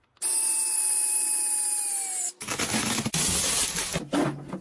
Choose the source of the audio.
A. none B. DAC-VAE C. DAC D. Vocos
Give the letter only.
A